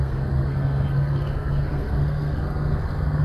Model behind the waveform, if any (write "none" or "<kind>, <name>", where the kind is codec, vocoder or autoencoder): codec, SNAC